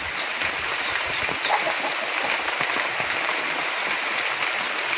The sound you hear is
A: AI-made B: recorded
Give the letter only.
B